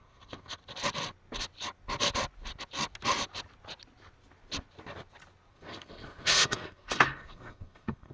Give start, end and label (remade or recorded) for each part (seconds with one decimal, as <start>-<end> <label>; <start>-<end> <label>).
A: 0.0-0.6 remade; 0.6-5.5 recorded; 5.5-8.1 remade